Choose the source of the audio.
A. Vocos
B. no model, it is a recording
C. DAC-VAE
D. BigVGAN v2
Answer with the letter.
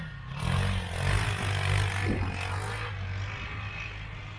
B